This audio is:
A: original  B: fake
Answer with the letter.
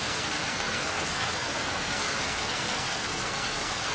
B